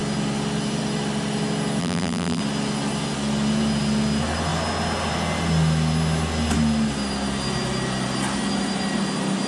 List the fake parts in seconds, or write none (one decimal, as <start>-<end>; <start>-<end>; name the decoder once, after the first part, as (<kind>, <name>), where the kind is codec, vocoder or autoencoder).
1.8-2.4 (vocoder, BigVGAN v2)